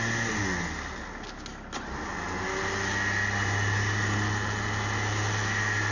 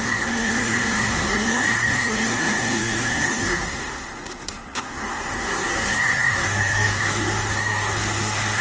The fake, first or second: second